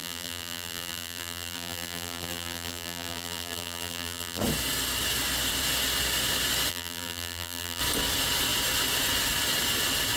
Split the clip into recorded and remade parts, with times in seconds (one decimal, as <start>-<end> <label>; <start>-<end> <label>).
0.0-4.4 remade; 4.4-6.7 recorded; 6.7-7.8 remade; 7.8-10.2 recorded